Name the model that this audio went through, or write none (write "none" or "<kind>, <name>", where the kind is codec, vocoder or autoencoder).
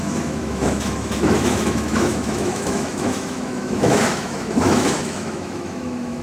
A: autoencoder, DAC-VAE